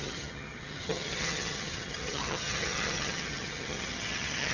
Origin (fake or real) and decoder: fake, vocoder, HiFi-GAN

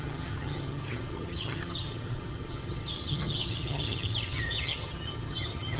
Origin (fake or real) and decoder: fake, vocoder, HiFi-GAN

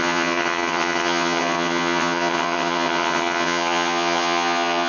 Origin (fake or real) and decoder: fake, vocoder, HiFi-GAN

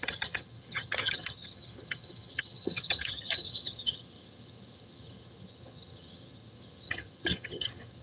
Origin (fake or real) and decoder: fake, vocoder, HiFi-GAN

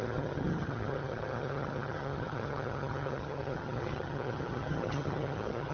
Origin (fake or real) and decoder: fake, vocoder, HiFi-GAN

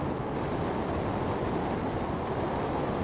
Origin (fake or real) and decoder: real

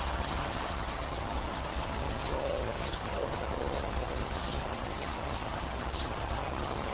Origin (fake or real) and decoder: fake, vocoder, HiFi-GAN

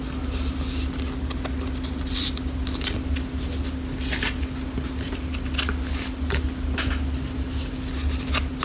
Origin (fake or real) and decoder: real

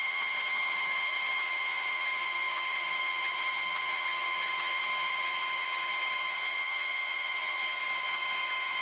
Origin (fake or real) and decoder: fake, vocoder, HiFi-GAN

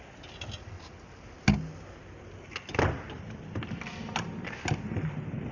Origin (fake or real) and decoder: real